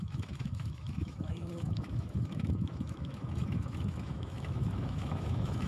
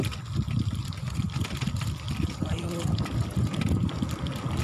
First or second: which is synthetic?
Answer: first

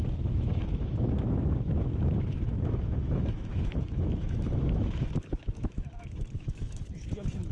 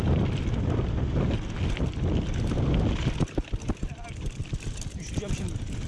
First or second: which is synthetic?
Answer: first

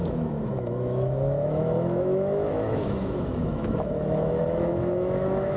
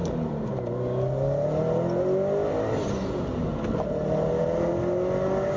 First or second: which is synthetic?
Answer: first